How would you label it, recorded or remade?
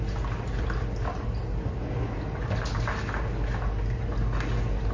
recorded